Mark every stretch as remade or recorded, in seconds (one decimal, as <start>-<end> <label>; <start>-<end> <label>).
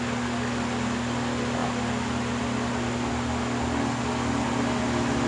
0.0-5.3 recorded